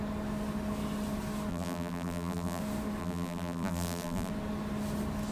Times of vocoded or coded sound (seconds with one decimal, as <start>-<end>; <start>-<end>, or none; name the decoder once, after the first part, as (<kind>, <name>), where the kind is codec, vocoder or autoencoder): 1.5-2.6 (vocoder, BigVGAN v2); 3.0-4.3